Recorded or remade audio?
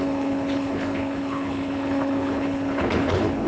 remade